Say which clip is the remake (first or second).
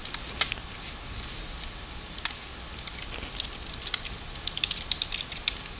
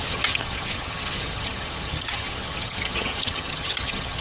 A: second